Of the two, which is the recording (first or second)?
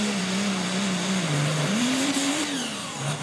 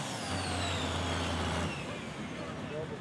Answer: second